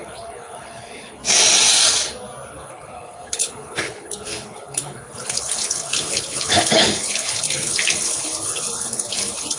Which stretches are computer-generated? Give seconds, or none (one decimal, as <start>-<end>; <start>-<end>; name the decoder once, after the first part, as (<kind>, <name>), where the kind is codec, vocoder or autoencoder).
0.0-1.2 (codec, HILCodec); 2.5-9.6